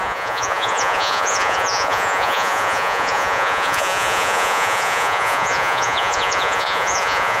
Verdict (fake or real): fake